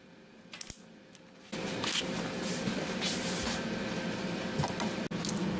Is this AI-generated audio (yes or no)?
no